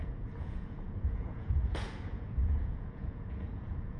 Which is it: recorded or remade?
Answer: remade